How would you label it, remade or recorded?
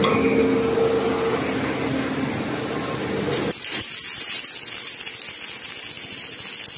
recorded